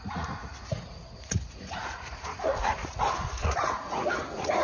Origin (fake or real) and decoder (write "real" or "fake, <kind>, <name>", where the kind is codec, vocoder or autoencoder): fake, vocoder, Vocos